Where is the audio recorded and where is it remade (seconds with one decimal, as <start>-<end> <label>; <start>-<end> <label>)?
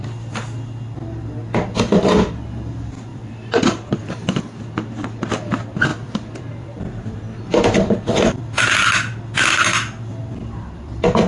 0.0-3.1 recorded; 3.1-4.4 remade; 4.4-5.9 recorded; 5.9-8.4 remade; 8.4-11.3 recorded